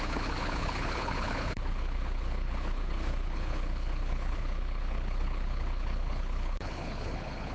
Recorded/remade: remade